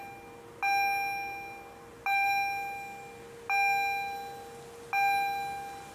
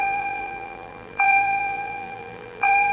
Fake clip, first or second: second